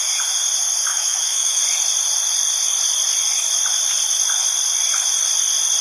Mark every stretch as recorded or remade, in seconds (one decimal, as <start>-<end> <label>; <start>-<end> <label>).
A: 0.0-0.9 recorded; 0.9-1.6 remade; 1.6-5.8 recorded